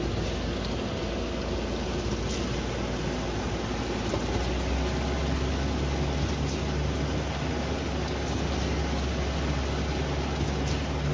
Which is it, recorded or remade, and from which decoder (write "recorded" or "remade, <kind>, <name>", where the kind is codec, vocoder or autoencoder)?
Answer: recorded